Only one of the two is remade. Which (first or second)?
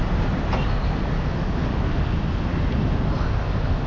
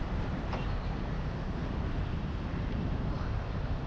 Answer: second